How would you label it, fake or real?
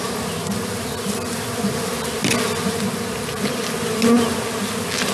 real